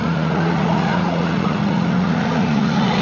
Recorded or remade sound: remade